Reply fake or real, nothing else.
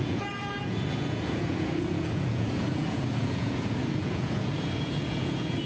fake